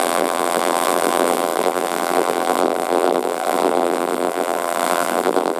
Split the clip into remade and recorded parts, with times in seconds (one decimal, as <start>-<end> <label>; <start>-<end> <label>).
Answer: 0.0-5.6 remade